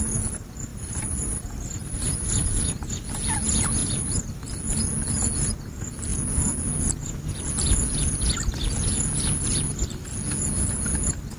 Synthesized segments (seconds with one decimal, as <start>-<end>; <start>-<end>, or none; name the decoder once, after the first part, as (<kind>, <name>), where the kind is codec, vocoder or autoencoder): 0.7-2.9 (vocoder, BigVGAN v2); 3.8-4.6